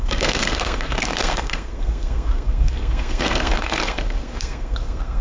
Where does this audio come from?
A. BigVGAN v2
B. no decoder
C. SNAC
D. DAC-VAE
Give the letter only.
C